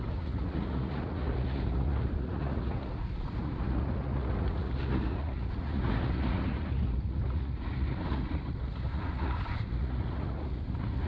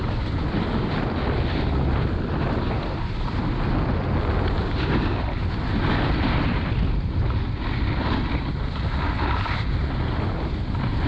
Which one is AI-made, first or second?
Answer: first